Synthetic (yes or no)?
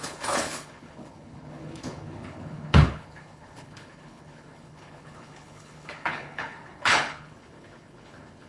yes